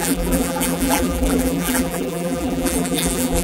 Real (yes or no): no